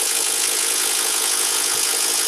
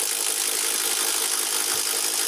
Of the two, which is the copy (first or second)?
first